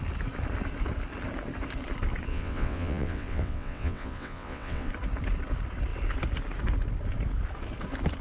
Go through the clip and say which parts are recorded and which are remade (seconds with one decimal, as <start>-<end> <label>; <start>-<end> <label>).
0.0-2.3 recorded; 2.3-4.9 remade; 4.9-8.2 recorded